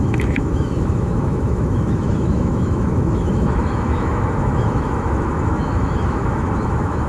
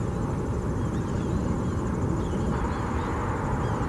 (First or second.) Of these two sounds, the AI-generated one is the first